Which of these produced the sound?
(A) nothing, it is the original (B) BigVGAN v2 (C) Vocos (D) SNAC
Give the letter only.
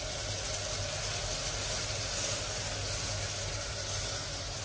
A